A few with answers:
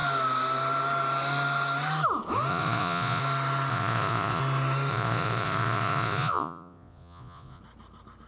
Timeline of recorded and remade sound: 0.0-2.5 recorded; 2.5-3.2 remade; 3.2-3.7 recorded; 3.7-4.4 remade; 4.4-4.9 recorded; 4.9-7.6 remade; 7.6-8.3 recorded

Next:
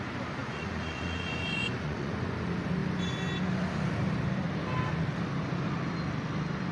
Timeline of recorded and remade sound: 0.0-0.4 recorded; 0.4-2.2 remade; 2.2-6.7 recorded